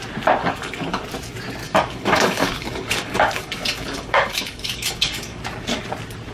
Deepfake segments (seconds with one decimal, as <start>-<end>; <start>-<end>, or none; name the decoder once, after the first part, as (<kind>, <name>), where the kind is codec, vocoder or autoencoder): 0.4-1.0 (codec, DAC); 1.6-5.4